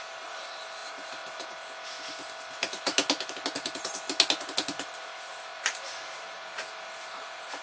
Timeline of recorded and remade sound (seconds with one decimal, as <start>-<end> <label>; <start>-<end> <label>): 0.0-0.8 remade; 0.8-5.4 recorded; 5.4-7.6 remade